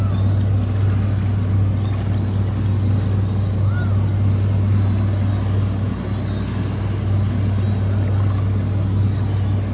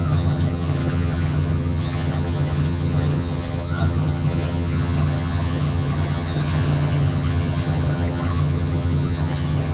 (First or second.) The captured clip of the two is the first